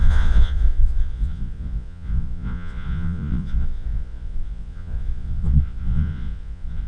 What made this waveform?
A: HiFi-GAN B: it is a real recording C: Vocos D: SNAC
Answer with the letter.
C